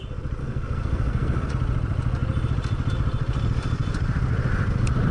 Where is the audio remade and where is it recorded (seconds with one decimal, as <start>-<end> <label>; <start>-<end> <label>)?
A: 0.0-0.4 recorded; 0.4-1.5 remade; 1.5-5.1 recorded